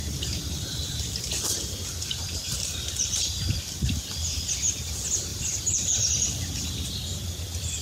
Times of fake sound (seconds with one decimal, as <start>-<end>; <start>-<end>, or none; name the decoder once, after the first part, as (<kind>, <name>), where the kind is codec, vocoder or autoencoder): 0.0-4.7 (vocoder, BigVGAN v2); 5.3-6.7